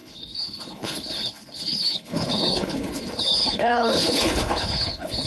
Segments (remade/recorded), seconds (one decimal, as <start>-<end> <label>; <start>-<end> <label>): 0.0-5.3 remade